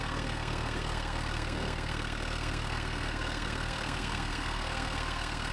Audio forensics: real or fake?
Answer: fake